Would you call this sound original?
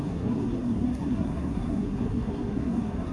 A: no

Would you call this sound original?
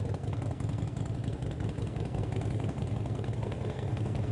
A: no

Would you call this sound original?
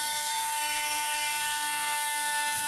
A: no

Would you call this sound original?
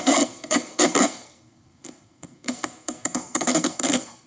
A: no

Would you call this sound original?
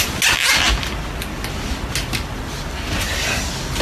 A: yes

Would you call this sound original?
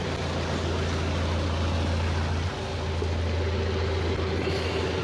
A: yes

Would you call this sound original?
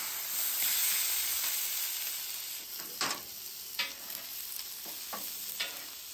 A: yes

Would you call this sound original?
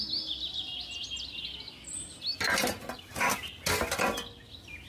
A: yes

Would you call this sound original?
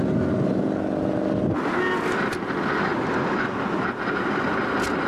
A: yes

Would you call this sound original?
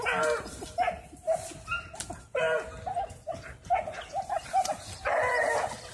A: yes